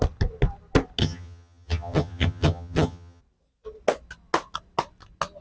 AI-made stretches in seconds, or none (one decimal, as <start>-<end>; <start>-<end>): 1.0-3.2